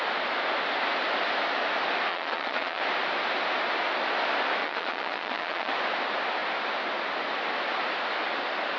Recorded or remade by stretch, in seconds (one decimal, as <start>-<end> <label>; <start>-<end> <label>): 0.0-2.1 recorded; 2.1-2.8 remade; 2.8-4.6 recorded; 4.6-5.7 remade; 5.7-8.8 recorded